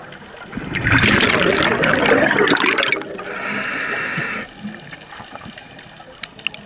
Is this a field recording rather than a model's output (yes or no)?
yes